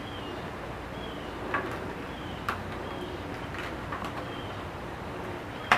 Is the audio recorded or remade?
remade